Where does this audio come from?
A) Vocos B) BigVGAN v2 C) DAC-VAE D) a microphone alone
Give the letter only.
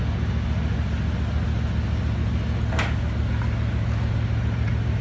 D